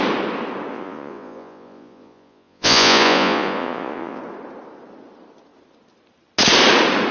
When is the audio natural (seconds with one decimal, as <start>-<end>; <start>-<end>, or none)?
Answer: 0.0-0.7; 4.2-7.1